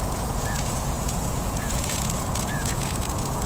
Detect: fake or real fake